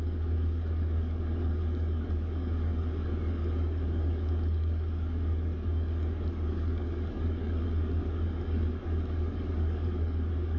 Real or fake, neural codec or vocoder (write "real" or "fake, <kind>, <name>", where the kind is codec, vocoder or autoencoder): fake, codec, DAC